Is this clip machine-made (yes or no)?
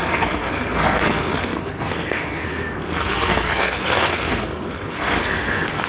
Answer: yes